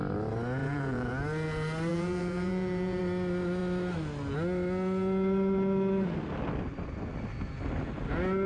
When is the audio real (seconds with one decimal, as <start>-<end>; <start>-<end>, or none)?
0.0-0.6; 1.1-1.9; 3.0-8.5